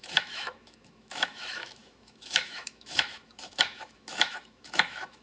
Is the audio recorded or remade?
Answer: remade